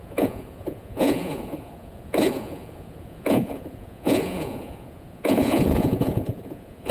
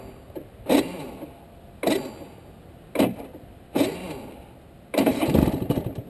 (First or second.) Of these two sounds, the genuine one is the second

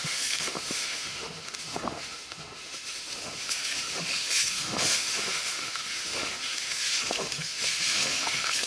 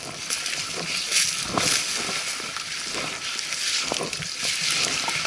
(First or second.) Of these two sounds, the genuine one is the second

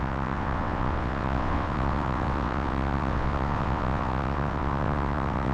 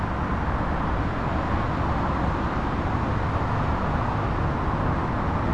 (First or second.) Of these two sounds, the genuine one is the second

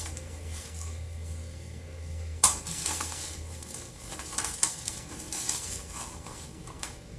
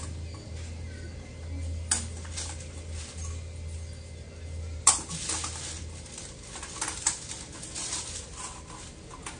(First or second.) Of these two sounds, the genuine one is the second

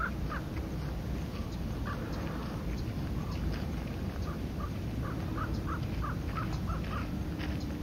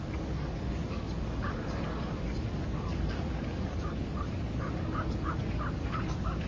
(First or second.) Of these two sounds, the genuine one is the first